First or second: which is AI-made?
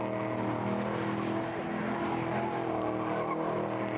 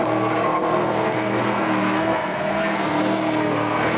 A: second